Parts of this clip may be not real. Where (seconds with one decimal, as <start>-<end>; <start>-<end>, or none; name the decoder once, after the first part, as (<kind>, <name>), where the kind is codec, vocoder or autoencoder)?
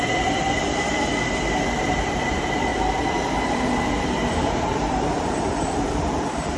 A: 0.0-2.7 (vocoder, BigVGAN v2); 3.3-6.6